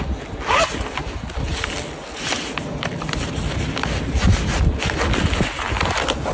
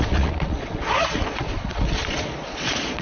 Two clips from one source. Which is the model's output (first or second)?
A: second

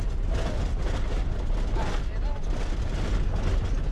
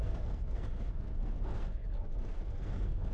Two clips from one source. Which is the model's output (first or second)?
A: second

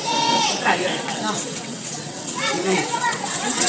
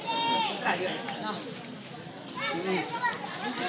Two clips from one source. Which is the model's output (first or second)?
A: first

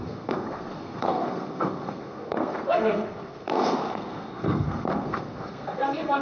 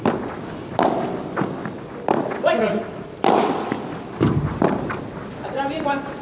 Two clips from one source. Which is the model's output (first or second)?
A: first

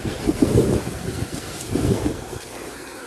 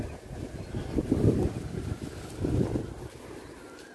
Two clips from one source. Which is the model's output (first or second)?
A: first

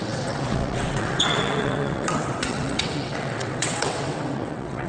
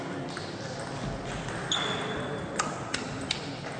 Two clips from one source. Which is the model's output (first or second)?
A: first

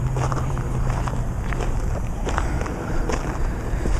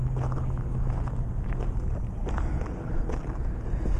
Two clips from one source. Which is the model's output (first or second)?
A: first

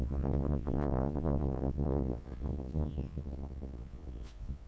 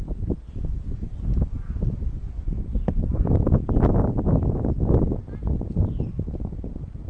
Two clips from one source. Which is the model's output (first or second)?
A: first